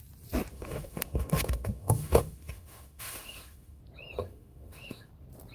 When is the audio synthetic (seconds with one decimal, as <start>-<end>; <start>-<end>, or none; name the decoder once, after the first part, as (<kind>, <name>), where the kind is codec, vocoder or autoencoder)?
0.5-3.8 (autoencoder, DAC-VAE); 4.2-5.1

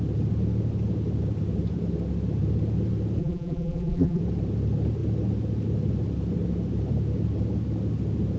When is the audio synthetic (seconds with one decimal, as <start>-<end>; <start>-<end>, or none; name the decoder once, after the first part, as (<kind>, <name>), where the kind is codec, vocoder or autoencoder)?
3.2-4.2 (vocoder, BigVGAN v2)

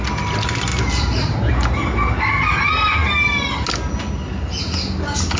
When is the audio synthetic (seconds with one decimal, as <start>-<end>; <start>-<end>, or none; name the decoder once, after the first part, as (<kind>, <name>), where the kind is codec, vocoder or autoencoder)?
0.7-1.5 (vocoder, BigVGAN v2)

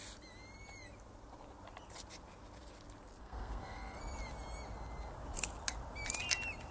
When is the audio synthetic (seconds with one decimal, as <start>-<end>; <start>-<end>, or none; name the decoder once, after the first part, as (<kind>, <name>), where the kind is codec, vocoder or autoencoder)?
3.2-4.0 (codec, SNAC)